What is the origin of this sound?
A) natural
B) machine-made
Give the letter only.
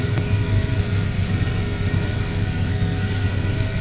B